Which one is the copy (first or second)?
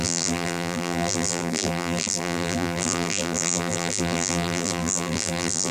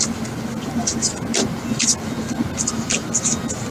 first